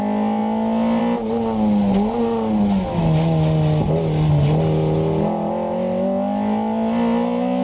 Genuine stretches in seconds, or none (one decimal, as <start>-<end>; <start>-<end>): 0.0-7.6